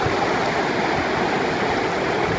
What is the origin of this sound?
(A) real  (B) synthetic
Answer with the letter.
A